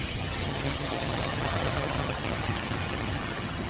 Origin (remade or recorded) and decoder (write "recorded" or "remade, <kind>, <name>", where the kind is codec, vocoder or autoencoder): remade, vocoder, HiFi-GAN